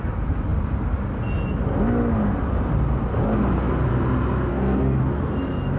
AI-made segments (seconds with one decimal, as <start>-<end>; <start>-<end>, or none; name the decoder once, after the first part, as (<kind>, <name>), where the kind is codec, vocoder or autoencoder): 4.5-5.0 (codec, DAC)